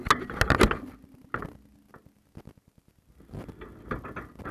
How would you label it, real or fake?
real